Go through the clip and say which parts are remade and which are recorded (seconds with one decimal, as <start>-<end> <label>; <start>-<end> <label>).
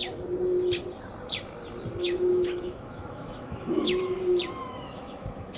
0.0-2.0 recorded; 2.0-4.0 remade; 4.0-4.6 recorded; 4.6-5.6 remade